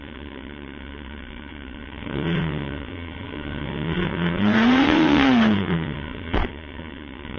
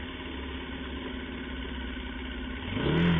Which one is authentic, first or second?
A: second